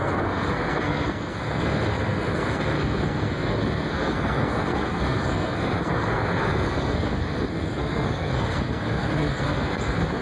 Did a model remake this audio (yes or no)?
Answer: yes